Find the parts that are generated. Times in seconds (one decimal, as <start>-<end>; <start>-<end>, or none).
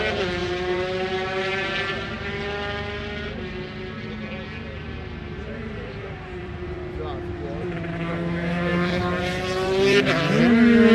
0.4-2.3; 5.4-6.8; 8.7-10.4